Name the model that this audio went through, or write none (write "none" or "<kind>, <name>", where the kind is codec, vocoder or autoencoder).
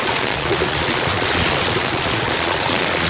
vocoder, Vocos